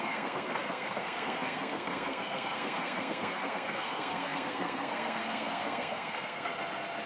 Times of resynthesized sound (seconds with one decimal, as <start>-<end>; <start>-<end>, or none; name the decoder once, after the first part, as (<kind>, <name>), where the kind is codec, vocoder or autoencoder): 0.0-6.5 (codec, SNAC)